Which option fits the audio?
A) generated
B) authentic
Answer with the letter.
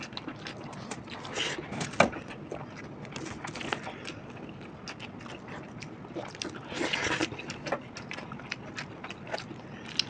B